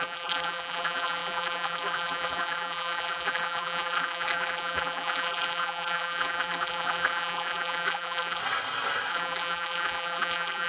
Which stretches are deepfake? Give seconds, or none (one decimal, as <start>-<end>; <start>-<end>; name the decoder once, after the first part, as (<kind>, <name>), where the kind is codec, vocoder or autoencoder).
0.0-8.4 (vocoder, BigVGAN v2); 9.1-10.7